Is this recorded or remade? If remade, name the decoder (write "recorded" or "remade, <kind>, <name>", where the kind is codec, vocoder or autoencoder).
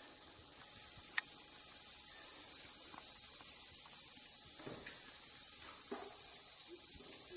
recorded